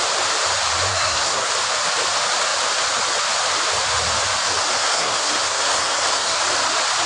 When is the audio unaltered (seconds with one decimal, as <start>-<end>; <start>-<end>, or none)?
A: 0.0-0.9; 1.5-4.8; 6.4-7.1